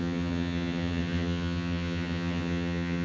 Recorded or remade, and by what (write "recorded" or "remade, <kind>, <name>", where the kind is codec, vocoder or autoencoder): remade, vocoder, HiFi-GAN